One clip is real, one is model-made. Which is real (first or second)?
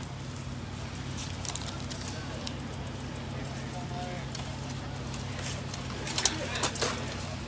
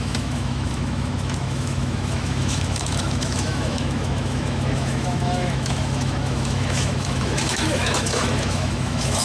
first